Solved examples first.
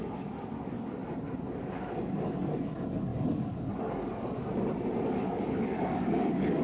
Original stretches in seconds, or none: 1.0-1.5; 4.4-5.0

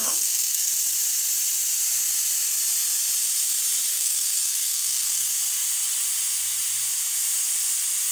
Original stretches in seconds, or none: 0.7-3.9; 5.3-8.1

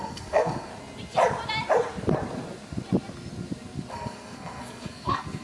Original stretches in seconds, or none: 0.7-3.9

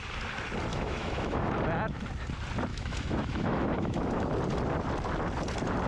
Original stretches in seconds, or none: 0.0-0.7; 1.5-2.7; 4.3-5.9

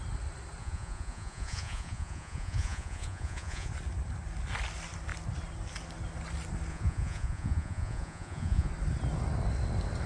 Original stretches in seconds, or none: 0.0-0.6; 3.7-6.7; 8.7-10.1

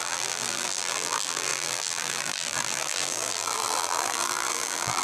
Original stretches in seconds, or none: none

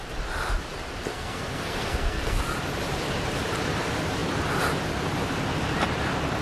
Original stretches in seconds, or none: 0.0-1.1; 2.4-6.4